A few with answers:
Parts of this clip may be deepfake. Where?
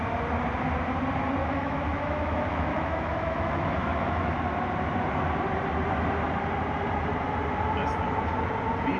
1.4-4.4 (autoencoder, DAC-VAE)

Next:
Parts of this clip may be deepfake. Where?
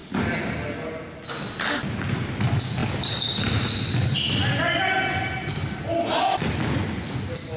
none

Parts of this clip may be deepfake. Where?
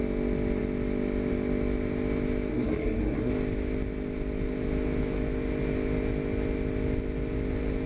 2.5-3.3 (codec, SNAC)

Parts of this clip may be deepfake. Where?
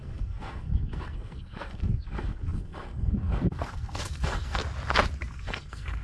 0.0-4.6 (codec, SNAC); 5.3-6.0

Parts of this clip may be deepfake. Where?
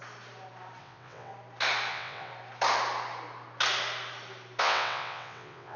0.8-1.3 (vocoder, WaveNeXt); 1.9-2.3; 4.6-5.8